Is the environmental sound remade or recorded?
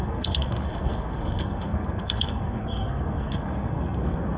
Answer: remade